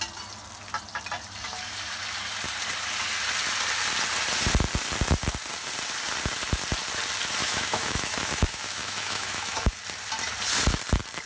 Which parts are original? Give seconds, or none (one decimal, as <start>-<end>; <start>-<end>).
0.0-7.4; 9.7-11.3